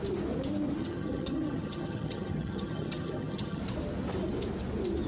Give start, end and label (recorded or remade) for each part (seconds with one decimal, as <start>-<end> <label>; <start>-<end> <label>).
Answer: 0.0-0.8 recorded; 0.8-3.6 remade; 3.6-5.1 recorded